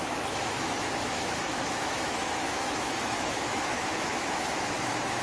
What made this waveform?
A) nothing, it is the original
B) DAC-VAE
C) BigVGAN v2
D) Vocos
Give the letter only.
B